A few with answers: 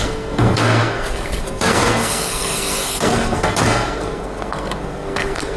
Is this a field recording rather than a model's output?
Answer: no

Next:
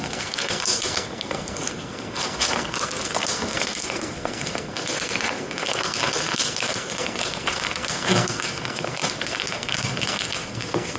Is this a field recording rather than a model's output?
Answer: no